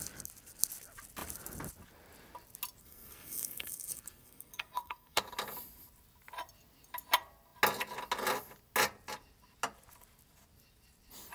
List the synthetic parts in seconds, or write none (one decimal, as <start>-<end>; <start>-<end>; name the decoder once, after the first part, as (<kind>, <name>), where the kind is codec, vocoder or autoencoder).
2.8-5.2 (codec, SNAC)